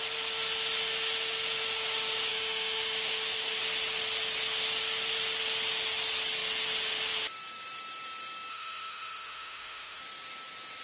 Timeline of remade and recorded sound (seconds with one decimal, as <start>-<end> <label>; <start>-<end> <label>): 0.0-2.3 recorded; 2.3-3.6 remade; 3.6-8.5 recorded; 8.5-10.0 remade; 10.0-10.8 recorded